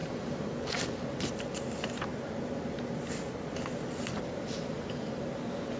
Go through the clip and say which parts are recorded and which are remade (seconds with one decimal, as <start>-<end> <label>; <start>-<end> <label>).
0.0-0.8 remade; 0.8-5.8 recorded